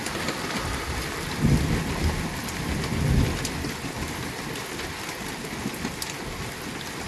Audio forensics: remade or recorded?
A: recorded